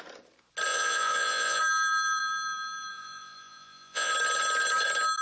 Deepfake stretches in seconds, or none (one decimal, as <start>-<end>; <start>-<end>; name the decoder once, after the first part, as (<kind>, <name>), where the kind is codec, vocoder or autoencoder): 0.7-1.6 (vocoder, Vocos); 2.9-4.1

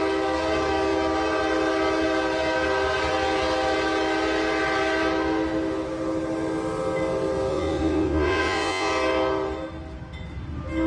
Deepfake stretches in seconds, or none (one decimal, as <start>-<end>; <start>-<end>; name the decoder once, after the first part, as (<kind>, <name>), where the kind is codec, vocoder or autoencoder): 7.5-8.9 (vocoder, Vocos)

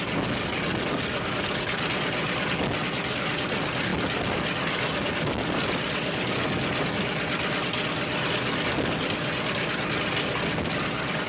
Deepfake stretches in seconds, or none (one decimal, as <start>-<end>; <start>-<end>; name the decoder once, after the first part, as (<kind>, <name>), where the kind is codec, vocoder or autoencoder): none

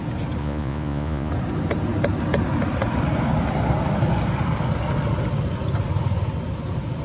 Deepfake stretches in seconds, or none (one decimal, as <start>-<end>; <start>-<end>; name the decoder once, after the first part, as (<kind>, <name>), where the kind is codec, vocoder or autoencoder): 0.4-1.3 (vocoder, Vocos)

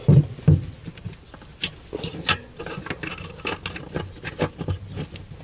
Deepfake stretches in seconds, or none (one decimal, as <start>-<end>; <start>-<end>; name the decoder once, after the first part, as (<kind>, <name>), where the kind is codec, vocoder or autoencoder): none

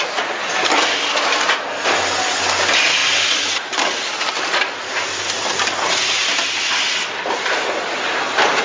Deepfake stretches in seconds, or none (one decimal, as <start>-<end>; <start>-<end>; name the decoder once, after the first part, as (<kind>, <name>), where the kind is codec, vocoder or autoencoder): none

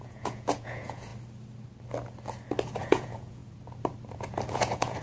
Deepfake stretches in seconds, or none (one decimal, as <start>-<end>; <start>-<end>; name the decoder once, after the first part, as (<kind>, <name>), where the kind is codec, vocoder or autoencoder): 0.0-1.1 (vocoder, Vocos); 2.8-3.4; 4.5-5.0

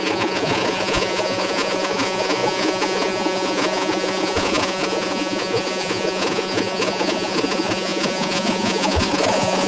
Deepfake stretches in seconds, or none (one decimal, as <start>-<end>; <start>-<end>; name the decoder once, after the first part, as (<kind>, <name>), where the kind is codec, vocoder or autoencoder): 0.0-9.7 (vocoder, Vocos)